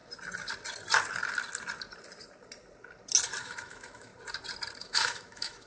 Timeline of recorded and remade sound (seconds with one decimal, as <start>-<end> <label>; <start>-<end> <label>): 0.0-3.4 recorded; 3.4-4.1 remade; 4.1-4.8 recorded; 4.8-5.7 remade